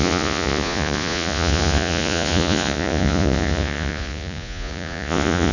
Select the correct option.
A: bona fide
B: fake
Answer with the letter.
B